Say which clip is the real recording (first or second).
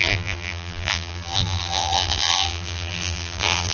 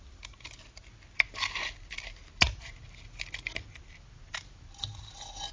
second